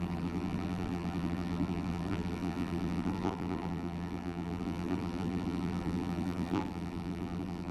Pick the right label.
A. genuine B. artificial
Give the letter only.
B